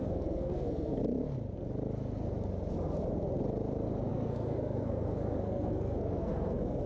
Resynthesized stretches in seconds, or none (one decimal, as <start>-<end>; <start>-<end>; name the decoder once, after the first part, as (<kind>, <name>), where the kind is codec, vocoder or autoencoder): 0.0-1.0 (codec, SNAC); 4.1-6.9